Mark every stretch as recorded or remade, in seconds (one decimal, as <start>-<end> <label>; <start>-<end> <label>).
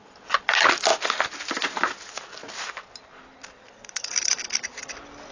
0.0-5.3 recorded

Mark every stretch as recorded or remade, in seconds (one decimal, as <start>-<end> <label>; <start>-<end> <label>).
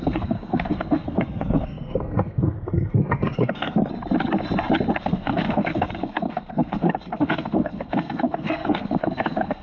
0.0-3.8 remade; 3.8-5.0 recorded; 5.0-9.6 remade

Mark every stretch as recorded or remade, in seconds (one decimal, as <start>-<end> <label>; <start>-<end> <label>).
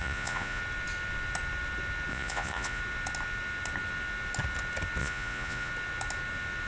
0.0-0.6 remade; 0.6-2.1 recorded; 2.1-2.8 remade; 2.8-5.0 recorded; 5.0-5.7 remade; 5.7-6.7 recorded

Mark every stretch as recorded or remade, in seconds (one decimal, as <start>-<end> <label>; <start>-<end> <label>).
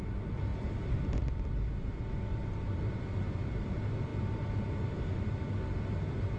0.0-0.5 recorded; 0.5-1.2 remade; 1.2-2.3 recorded; 2.3-2.8 remade; 2.8-6.4 recorded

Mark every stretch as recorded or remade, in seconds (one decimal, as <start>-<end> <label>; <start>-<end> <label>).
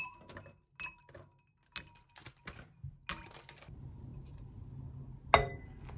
0.0-6.0 recorded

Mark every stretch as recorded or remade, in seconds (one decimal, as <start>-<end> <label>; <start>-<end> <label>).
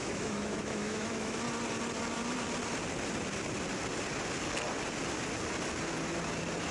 0.0-1.4 remade; 1.4-6.7 recorded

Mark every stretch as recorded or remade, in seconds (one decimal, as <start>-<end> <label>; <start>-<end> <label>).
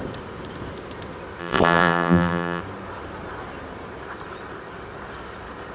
0.0-1.4 recorded; 1.4-2.6 remade; 2.6-5.7 recorded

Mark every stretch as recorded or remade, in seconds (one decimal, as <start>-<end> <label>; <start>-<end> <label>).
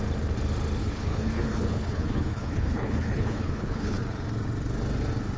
0.0-0.8 recorded; 0.8-4.0 remade; 4.0-5.4 recorded